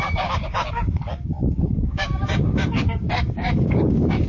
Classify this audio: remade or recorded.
remade